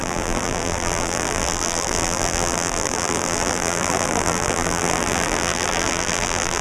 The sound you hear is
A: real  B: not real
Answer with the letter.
B